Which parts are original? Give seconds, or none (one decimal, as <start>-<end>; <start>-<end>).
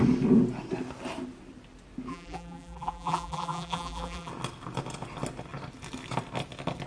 0.0-2.1; 4.3-6.9